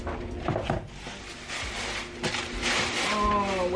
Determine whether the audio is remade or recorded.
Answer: recorded